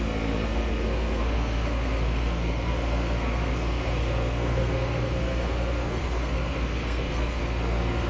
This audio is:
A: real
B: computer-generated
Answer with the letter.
B